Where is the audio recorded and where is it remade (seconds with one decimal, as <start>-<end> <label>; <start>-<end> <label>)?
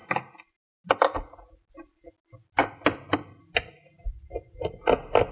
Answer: 0.0-5.3 recorded